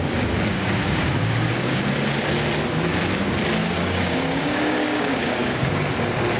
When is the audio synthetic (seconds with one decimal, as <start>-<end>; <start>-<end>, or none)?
0.5-1.8; 3.6-5.9